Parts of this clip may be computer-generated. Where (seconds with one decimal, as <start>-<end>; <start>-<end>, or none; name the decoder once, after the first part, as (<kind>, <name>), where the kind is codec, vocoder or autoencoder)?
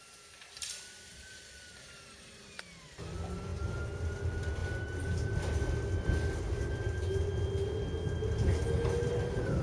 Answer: none